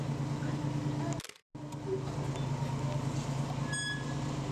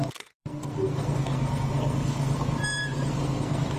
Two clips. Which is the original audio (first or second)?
first